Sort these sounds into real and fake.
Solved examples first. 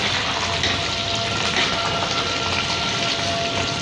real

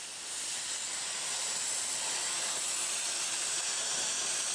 real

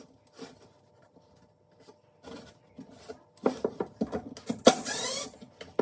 real